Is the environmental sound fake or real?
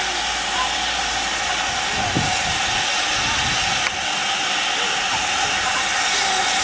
real